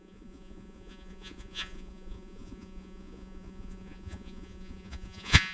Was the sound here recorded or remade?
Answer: remade